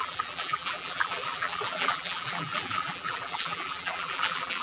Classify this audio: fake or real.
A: fake